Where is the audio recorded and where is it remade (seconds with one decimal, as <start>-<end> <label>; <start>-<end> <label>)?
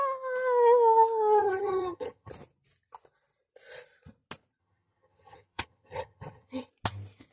0.0-1.4 recorded; 1.4-2.3 remade; 2.3-4.6 recorded; 4.6-6.7 remade; 6.7-7.3 recorded